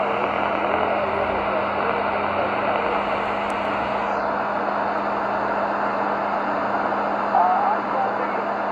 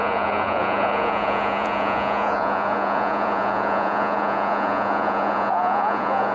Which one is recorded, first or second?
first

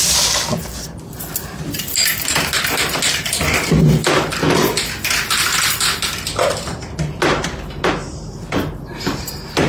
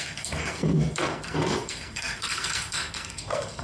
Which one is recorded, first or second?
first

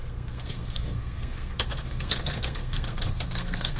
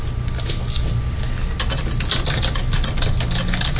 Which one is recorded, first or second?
second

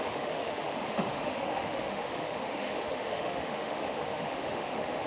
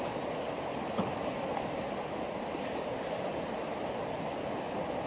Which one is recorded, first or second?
second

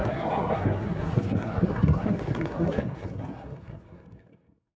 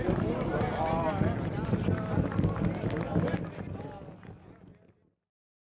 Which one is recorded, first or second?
second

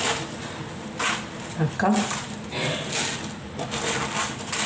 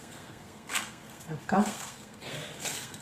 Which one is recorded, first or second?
first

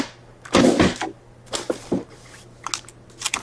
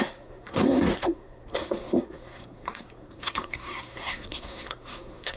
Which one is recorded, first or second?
first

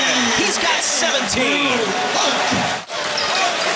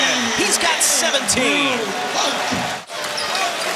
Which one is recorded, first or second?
second